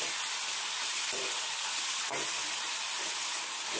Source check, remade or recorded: recorded